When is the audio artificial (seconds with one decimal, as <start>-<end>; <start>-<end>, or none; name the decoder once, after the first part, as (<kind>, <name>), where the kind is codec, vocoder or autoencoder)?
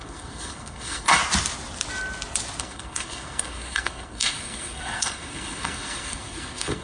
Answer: 0.0-1.2 (codec, SNAC); 2.6-6.8